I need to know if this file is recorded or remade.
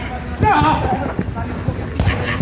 recorded